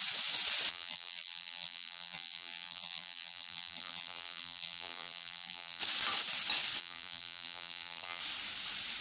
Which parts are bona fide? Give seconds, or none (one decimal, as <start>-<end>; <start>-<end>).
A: 0.0-0.7; 5.8-6.8; 8.2-9.0